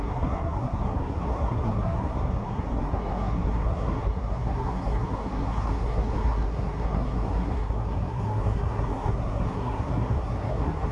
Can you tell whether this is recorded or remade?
remade